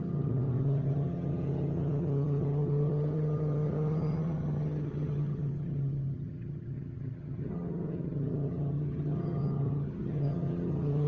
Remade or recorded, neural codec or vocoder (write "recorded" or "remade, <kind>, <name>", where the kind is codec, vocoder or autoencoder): remade, vocoder, HiFi-GAN